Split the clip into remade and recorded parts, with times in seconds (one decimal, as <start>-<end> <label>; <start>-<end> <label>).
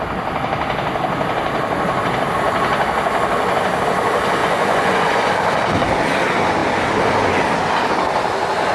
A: 0.0-4.4 recorded; 4.4-5.3 remade; 5.3-8.7 recorded